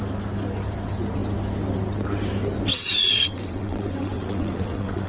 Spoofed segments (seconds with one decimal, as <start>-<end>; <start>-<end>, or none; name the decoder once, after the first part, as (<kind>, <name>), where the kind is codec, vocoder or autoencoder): 2.7-5.1 (vocoder, WaveNeXt)